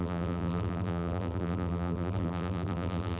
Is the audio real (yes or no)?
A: no